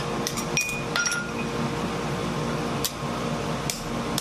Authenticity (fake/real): real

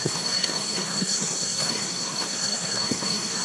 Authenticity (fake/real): fake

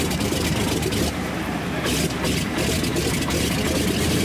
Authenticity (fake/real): real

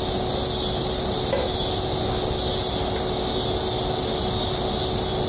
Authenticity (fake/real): real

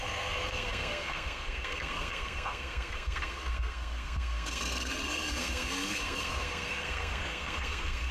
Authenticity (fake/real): fake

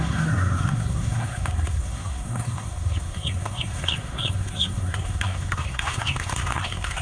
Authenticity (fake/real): fake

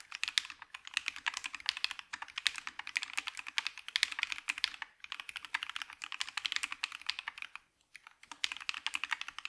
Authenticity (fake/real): real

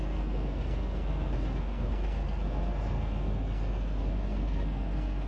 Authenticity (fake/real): fake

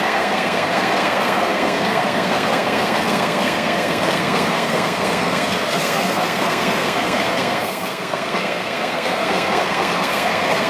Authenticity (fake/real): fake